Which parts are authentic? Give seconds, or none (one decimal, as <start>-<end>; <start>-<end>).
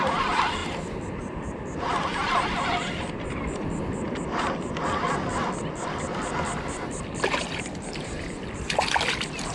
0.0-9.5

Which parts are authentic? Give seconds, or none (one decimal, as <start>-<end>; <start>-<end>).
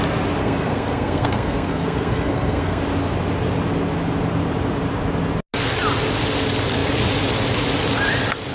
0.0-0.4; 2.8-8.5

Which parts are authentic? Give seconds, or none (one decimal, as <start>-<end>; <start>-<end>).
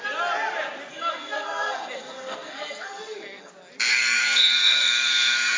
0.0-0.9; 3.5-3.9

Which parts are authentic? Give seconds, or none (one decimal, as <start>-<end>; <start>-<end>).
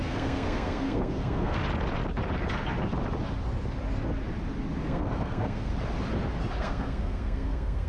1.6-4.8; 5.7-6.6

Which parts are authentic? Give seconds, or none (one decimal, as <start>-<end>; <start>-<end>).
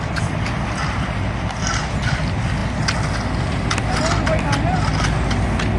0.0-5.8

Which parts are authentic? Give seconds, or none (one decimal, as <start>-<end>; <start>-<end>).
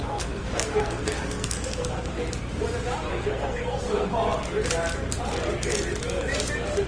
2.1-3.1; 4.1-6.9